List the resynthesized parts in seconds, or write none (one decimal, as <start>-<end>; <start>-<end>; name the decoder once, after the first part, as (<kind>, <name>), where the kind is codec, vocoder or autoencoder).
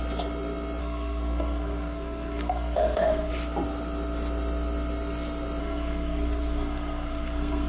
0.8-3.3 (codec, SNAC); 5.6-7.7